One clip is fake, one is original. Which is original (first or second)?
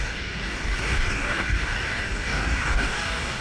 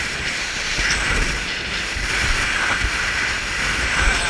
second